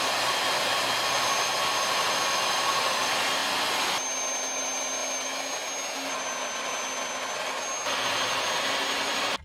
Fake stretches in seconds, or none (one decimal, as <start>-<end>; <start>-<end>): none